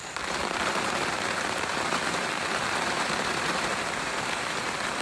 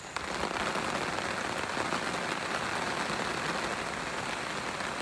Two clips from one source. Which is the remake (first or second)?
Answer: first